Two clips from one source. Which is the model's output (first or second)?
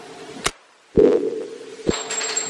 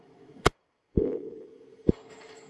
second